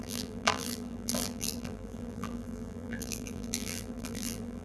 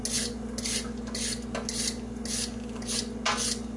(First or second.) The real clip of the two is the second